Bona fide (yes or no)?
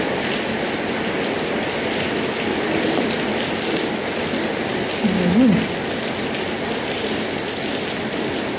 yes